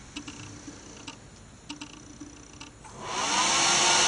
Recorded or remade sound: recorded